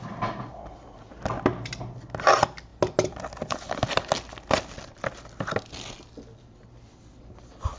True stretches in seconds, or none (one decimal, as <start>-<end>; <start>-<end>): 0.0-7.8